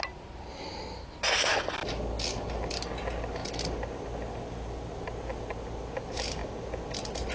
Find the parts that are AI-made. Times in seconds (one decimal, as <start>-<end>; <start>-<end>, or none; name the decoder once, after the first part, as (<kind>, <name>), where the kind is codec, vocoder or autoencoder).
none